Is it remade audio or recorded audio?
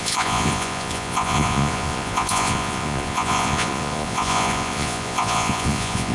remade